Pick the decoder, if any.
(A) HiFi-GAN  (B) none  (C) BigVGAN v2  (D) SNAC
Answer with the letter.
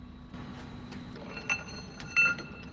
B